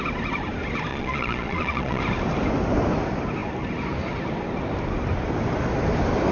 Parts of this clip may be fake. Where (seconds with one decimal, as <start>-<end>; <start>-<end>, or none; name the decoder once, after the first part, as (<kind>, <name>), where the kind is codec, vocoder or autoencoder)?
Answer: 0.9-2.0 (vocoder, Vocos)